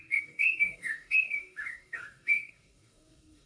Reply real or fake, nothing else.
fake